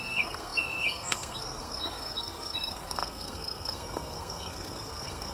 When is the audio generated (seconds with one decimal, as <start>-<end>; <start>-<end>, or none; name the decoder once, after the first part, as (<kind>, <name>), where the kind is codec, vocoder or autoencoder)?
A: 0.0-5.3 (codec, SNAC)